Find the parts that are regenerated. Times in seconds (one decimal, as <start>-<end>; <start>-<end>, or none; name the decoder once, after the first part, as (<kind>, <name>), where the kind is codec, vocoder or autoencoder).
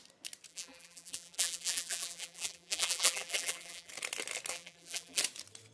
0.5-3.9 (vocoder, BigVGAN v2); 4.5-5.2